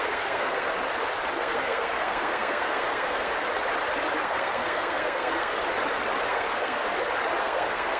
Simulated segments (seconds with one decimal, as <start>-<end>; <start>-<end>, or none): 0.0-0.7; 1.3-3.3; 4.2-5.6; 6.3-6.8; 7.4-8.0